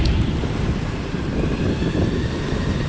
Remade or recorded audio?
recorded